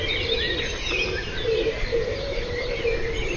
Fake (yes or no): yes